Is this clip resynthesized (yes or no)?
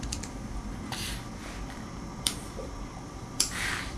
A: yes